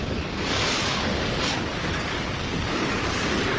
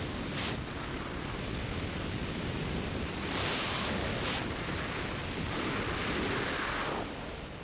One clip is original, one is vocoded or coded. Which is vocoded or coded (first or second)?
first